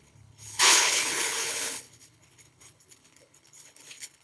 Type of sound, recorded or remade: remade